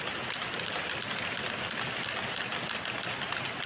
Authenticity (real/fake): real